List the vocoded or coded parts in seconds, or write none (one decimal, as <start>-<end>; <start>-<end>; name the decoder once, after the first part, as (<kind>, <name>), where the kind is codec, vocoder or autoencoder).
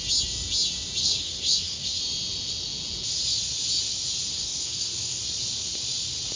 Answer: 1.0-2.0 (codec, SNAC); 4.3-5.2